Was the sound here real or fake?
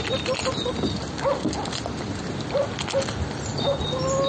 real